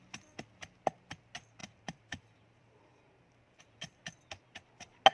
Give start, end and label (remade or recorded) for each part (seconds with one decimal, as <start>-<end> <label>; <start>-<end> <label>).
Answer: 0.0-1.6 recorded; 1.6-3.7 remade; 3.7-5.1 recorded